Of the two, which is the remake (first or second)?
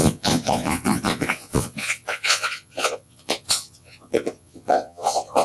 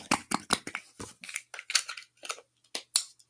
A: first